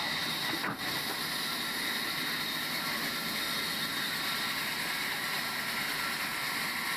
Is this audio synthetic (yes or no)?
no